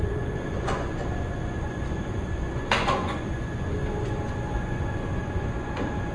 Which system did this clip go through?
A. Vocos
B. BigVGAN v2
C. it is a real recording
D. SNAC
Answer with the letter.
A